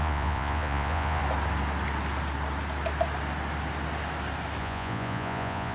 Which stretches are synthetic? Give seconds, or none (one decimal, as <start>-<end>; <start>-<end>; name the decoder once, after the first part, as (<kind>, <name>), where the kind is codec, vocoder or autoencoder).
0.0-1.2 (vocoder, Vocos); 4.6-5.7